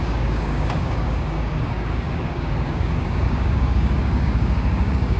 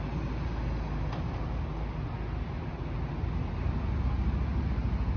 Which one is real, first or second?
second